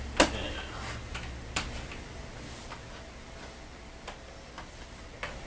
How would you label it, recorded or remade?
recorded